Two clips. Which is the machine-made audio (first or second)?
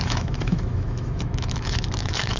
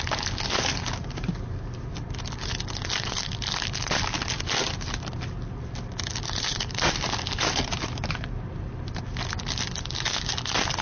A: first